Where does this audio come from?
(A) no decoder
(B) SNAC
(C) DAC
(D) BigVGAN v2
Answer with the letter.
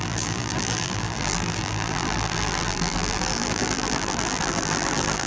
D